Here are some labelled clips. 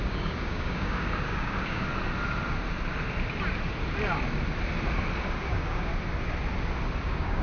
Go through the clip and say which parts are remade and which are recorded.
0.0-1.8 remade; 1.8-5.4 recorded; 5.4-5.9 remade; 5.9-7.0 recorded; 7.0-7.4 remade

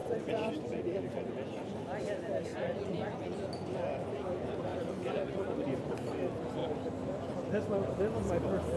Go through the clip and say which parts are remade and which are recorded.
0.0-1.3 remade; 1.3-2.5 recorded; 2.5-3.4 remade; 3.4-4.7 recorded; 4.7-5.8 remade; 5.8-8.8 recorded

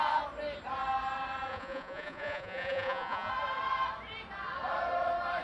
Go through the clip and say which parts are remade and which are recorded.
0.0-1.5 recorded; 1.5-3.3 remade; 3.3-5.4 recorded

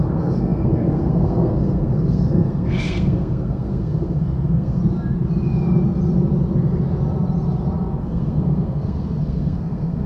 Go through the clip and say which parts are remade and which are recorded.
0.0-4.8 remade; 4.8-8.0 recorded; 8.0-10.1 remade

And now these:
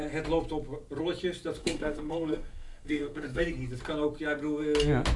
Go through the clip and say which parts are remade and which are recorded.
0.0-1.6 recorded; 1.6-3.4 remade; 3.4-5.2 recorded

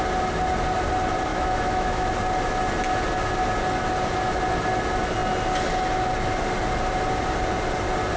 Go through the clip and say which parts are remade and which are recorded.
0.0-1.3 recorded; 1.3-2.1 remade; 2.1-8.2 recorded